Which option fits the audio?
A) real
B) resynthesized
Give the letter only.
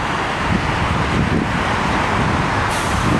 A